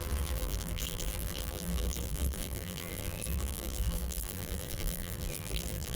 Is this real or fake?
fake